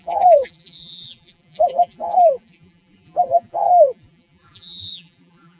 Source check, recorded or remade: remade